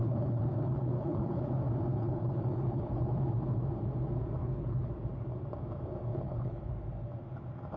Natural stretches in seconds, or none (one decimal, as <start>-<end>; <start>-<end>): 1.5-1.9; 3.1-4.4; 4.9-6.1; 6.7-7.8